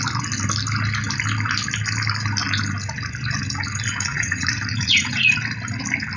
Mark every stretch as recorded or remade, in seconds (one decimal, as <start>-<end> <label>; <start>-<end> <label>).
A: 0.0-4.1 recorded; 4.1-5.3 remade; 5.3-6.2 recorded